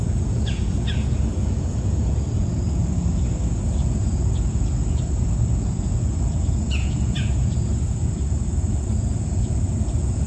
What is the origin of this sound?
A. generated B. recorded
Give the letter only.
A